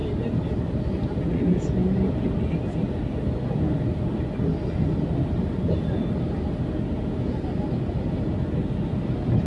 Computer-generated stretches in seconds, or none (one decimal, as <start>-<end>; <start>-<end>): none